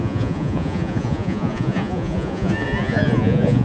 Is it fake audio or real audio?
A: fake